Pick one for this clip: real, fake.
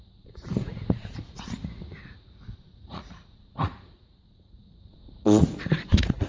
fake